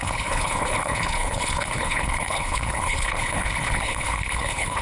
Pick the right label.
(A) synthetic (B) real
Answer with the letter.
A